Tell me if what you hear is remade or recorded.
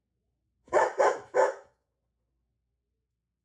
remade